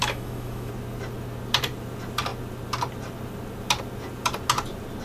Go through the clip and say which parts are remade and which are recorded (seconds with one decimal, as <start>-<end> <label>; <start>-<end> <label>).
0.0-0.7 remade; 0.7-5.0 recorded